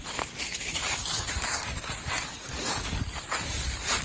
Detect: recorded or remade remade